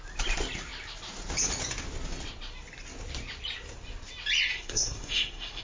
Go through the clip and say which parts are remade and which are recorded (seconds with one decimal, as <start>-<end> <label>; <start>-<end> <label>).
0.0-4.5 recorded; 4.5-5.6 remade